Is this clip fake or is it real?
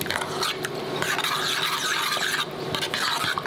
real